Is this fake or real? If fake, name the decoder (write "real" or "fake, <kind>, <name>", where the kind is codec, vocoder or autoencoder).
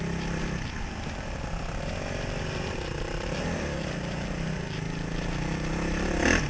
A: real